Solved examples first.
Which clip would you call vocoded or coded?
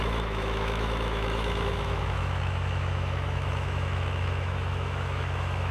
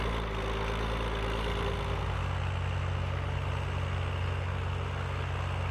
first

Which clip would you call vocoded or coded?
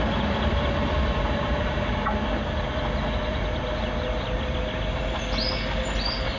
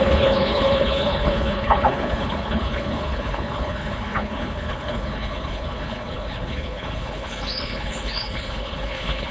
second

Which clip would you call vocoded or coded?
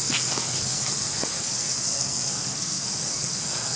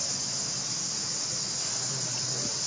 first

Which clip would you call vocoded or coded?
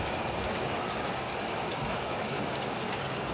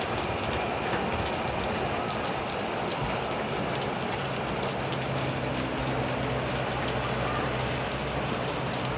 first